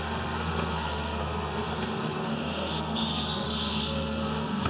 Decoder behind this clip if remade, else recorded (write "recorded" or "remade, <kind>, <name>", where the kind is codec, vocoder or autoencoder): remade, codec, SNAC